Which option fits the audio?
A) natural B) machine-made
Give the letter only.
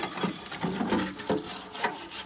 A